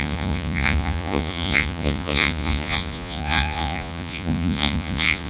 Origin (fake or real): fake